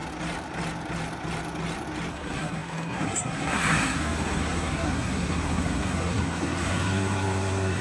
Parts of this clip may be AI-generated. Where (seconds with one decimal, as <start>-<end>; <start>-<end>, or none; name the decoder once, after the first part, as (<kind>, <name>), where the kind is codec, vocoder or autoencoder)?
2.1-7.8 (codec, SNAC)